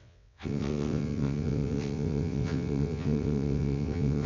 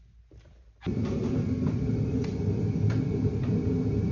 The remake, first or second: first